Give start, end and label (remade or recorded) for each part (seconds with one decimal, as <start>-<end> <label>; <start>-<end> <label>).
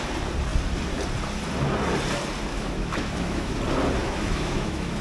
0.0-2.5 recorded; 2.5-3.6 remade; 3.6-4.0 recorded; 4.0-5.0 remade